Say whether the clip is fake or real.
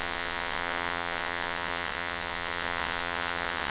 fake